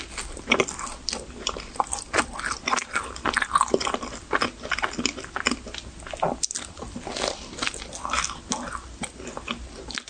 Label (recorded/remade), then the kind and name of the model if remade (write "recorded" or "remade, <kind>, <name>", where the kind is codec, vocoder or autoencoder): recorded